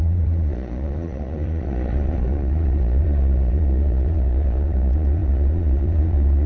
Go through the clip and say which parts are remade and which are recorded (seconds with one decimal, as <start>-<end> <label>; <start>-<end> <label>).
0.0-6.5 remade